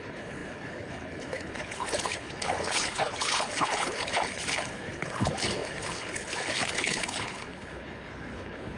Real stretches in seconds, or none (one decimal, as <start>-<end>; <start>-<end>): none